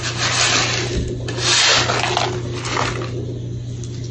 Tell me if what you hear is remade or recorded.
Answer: recorded